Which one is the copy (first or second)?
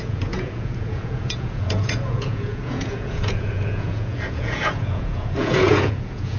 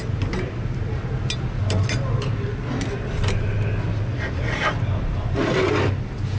first